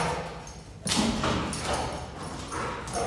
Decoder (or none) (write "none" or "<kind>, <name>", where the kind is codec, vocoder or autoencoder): none